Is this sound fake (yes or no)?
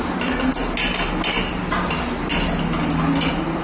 no